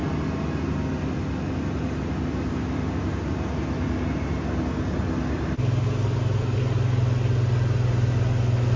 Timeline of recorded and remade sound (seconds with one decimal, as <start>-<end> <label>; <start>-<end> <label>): 0.0-8.8 recorded